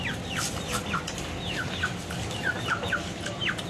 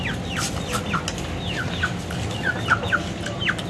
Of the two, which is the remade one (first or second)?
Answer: first